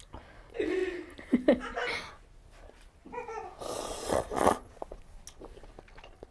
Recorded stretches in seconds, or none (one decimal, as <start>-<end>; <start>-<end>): 0.0-3.8; 5.0-6.3